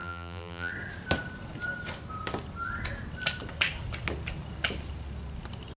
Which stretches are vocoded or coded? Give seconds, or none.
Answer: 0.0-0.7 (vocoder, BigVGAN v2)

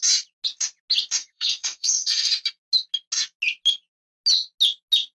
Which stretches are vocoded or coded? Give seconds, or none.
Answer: 1.2-2.3 (codec, SNAC)

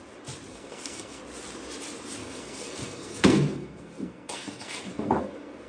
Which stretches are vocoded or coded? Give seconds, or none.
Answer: 0.5-1.2 (codec, SNAC); 2.2-5.7